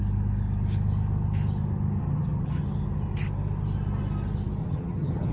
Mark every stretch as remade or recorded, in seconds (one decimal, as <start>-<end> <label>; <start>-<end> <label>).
0.0-2.0 recorded; 2.0-2.6 remade; 2.6-4.6 recorded; 4.6-5.3 remade